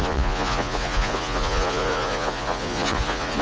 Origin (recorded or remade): remade